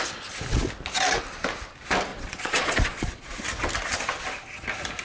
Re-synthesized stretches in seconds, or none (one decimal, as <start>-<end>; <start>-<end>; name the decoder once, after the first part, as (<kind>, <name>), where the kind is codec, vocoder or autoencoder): 2.1-3.4 (vocoder, Vocos)